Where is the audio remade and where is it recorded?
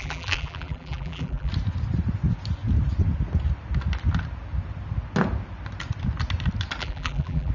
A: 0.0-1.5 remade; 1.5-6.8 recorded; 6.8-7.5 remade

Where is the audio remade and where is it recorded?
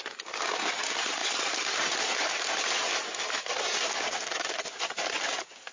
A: 0.0-1.2 recorded; 1.2-4.6 remade; 4.6-5.7 recorded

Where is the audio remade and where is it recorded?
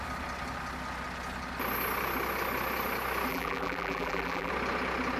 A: 0.0-3.3 recorded; 3.3-4.5 remade; 4.5-5.2 recorded